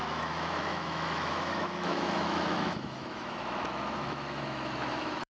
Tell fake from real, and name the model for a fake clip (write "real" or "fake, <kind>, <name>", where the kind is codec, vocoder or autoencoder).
fake, autoencoder, DAC-VAE